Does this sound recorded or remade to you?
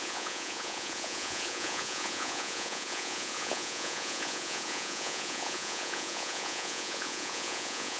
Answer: remade